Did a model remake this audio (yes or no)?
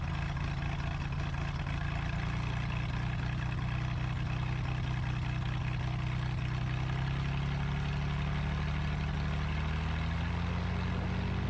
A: no